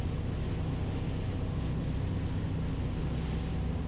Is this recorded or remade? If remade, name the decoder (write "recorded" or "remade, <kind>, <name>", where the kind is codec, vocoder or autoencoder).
recorded